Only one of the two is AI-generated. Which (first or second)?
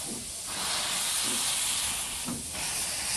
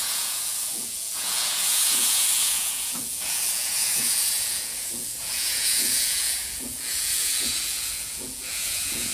second